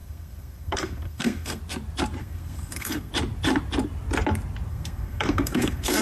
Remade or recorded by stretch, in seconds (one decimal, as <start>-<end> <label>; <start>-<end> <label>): 0.0-1.6 remade; 1.6-2.2 recorded; 2.2-3.1 remade; 3.1-4.7 recorded; 4.7-6.0 remade